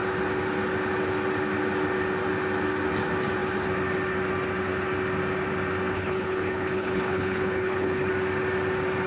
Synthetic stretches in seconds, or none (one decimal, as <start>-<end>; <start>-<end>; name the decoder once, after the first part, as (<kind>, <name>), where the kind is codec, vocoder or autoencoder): 5.9-8.1 (codec, HILCodec)

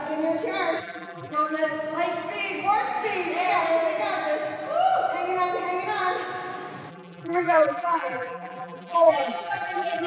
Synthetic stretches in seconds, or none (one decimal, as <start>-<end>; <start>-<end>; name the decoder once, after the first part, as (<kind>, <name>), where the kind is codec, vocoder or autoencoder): 0.8-1.7 (vocoder, BigVGAN v2); 6.9-10.1

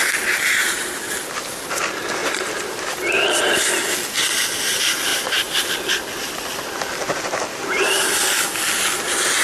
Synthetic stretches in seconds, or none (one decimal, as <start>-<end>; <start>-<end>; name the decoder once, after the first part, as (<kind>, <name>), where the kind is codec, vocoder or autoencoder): 0.6-1.1 (vocoder, BigVGAN v2); 2.2-3.4; 5.1-5.7

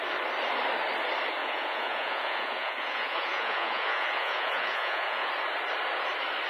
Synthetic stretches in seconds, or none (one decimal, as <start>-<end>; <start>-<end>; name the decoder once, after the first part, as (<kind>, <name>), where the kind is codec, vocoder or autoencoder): 1.4-5.3 (vocoder, Vocos)

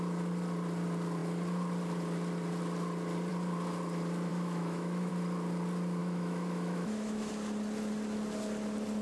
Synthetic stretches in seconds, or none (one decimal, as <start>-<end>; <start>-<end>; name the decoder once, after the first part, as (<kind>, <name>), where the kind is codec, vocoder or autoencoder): 4.3-5.1 (autoencoder, DAC-VAE); 6.0-7.3

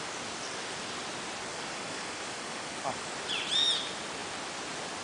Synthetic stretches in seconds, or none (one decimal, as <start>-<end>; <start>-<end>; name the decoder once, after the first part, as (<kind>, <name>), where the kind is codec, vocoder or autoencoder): 1.5-3.1 (codec, DAC)

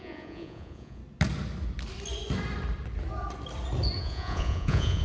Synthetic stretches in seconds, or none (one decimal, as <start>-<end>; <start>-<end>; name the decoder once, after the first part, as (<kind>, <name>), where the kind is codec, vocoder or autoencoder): 0.0-1.0 (vocoder, Vocos); 4.0-5.0

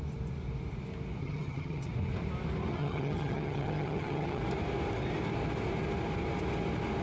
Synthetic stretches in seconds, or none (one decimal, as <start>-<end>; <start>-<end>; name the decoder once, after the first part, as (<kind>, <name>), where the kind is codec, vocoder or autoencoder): 1.2-1.9 (vocoder, HiFi-GAN); 2.7-4.4